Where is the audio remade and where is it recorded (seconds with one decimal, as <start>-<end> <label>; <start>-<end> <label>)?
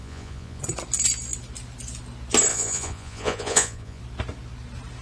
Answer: 0.0-0.6 remade; 0.6-2.5 recorded; 2.5-4.0 remade; 4.0-5.0 recorded